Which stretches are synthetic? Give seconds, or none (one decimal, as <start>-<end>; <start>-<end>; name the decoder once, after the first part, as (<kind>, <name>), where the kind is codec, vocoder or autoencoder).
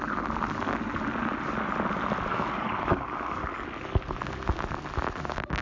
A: 2.3-3.4 (codec, DAC)